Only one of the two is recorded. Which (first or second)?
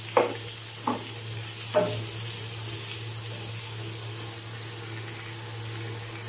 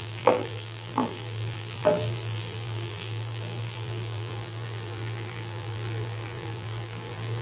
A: first